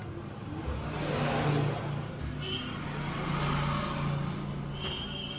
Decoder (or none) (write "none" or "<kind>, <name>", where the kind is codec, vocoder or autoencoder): none